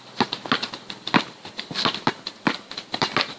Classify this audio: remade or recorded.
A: recorded